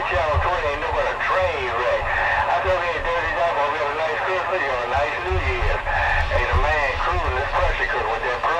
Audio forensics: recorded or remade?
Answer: recorded